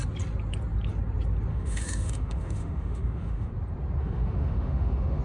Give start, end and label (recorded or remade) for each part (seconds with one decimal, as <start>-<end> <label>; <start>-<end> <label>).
0.0-1.5 recorded; 1.5-3.5 remade; 3.5-4.0 recorded; 4.0-5.2 remade